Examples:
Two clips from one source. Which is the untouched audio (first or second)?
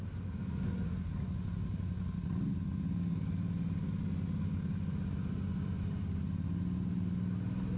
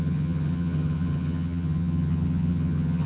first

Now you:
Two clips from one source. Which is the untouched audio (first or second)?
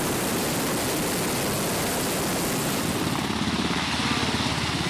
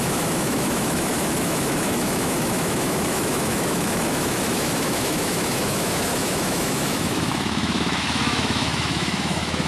first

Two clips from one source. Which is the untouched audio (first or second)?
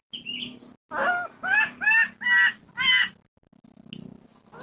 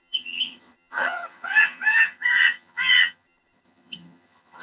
first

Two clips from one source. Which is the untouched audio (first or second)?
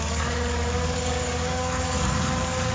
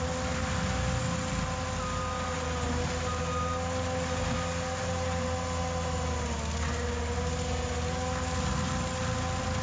second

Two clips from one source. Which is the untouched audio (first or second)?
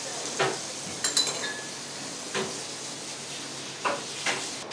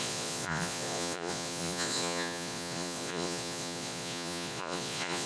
first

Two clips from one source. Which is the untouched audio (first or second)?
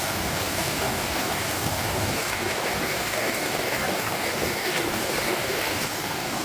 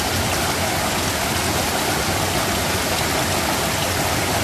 second